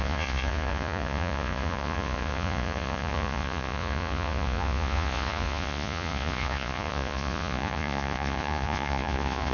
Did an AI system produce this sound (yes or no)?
yes